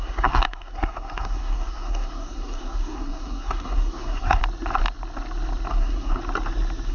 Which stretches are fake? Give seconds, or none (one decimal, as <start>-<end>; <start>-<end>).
0.0-4.4; 5.7-6.2